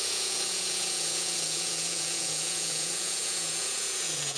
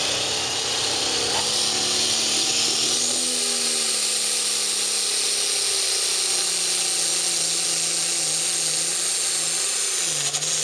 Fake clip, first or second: first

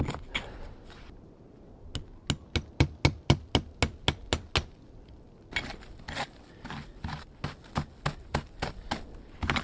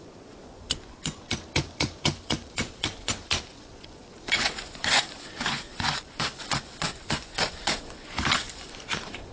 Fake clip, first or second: second